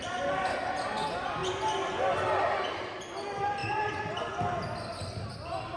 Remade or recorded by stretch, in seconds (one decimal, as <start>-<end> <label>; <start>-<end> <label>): 0.0-5.8 recorded